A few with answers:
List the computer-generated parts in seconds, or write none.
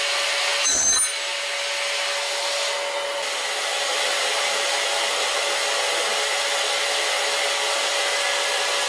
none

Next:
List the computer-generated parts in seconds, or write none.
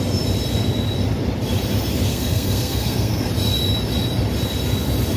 2.1-3.3 (codec, SNAC)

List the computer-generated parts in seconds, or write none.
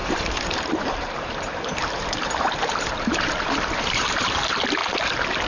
0.0-4.8 (vocoder, BigVGAN v2)